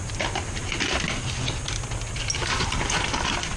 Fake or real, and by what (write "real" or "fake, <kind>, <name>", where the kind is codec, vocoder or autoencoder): real